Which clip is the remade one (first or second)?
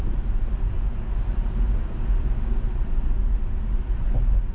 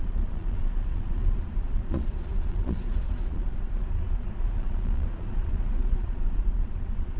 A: second